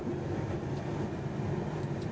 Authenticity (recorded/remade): recorded